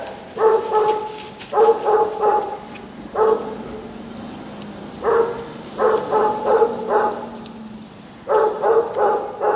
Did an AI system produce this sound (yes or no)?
no